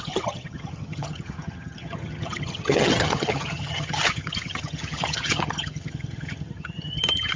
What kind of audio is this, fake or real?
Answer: fake